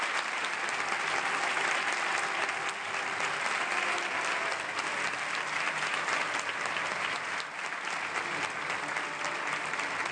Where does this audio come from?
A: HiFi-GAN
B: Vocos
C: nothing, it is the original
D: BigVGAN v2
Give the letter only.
C